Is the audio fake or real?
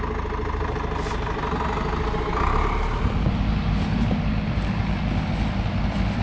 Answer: real